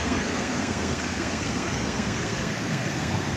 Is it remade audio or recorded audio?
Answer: remade